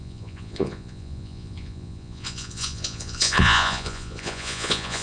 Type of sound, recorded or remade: remade